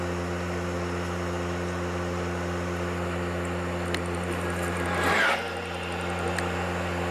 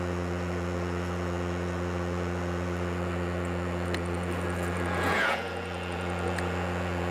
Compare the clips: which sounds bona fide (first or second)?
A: first